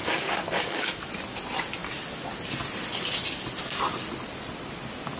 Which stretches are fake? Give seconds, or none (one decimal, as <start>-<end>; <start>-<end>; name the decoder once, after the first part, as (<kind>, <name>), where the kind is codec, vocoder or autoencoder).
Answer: 0.0-1.1 (codec, DAC)